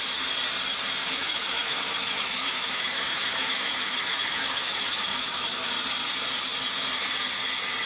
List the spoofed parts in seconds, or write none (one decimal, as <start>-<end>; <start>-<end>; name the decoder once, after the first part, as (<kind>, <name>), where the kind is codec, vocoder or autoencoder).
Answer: 1.0-5.7 (autoencoder, DAC-VAE)